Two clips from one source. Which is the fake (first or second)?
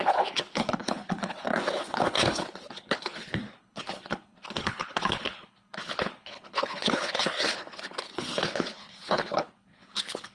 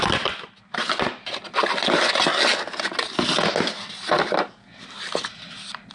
first